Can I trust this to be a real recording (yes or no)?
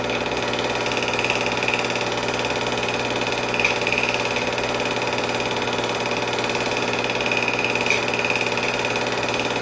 yes